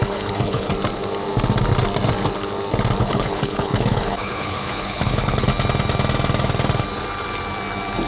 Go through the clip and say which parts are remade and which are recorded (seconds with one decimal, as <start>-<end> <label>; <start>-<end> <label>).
0.0-0.7 remade; 0.7-3.0 recorded; 3.0-5.5 remade; 5.5-8.1 recorded